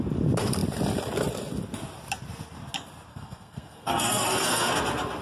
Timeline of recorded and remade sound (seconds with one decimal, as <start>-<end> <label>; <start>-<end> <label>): 0.0-3.1 recorded; 3.1-4.7 remade; 4.7-5.2 recorded